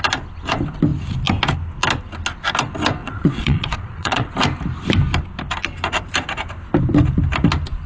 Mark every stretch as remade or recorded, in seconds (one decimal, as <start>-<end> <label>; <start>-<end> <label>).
0.0-3.0 recorded; 3.0-4.3 remade; 4.3-7.9 recorded